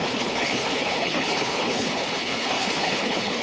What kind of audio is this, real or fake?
fake